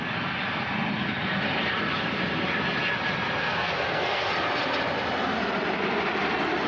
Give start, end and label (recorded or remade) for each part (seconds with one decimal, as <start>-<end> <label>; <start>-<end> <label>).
0.0-3.4 recorded; 3.4-4.3 remade; 4.3-6.7 recorded